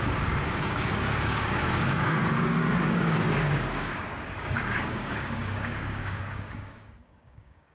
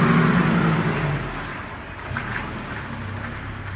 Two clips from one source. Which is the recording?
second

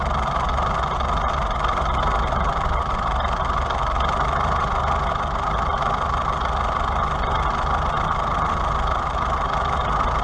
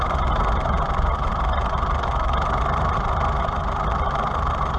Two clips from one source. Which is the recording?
first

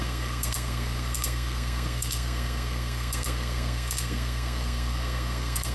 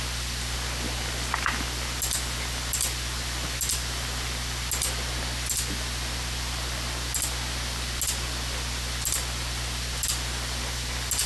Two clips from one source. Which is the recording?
second